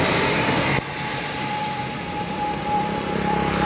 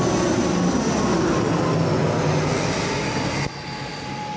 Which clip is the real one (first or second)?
second